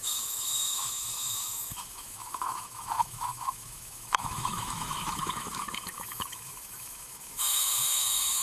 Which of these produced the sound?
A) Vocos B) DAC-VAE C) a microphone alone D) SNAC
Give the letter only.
B